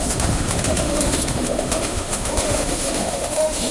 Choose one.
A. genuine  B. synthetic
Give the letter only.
B